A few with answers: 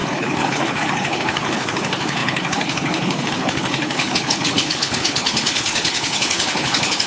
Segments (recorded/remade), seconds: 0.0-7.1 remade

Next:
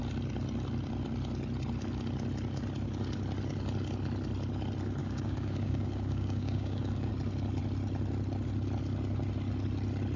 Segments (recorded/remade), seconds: 0.0-5.0 recorded; 5.0-7.1 remade; 7.1-10.2 recorded

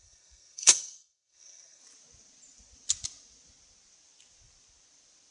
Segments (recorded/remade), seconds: 0.0-1.8 remade; 1.8-5.3 recorded

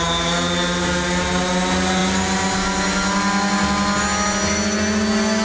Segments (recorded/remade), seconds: 0.0-5.4 recorded

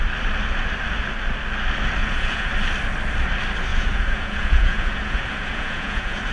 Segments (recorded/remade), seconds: 0.0-2.0 recorded; 2.0-2.5 remade; 2.5-3.7 recorded; 3.7-6.3 remade